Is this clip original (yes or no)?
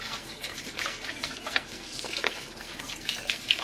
no